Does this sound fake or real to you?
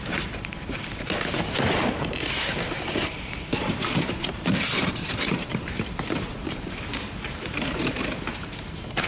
fake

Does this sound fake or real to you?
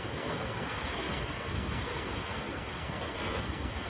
fake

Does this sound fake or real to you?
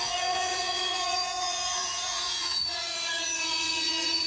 fake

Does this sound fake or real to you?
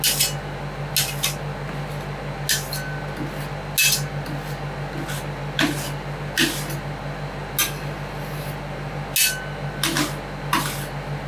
real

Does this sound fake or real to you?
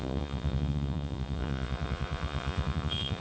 fake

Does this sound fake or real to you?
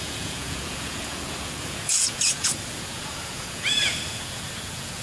fake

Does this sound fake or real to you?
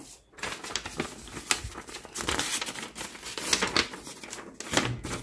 real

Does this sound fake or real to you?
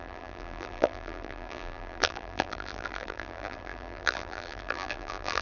fake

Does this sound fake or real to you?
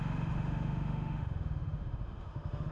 fake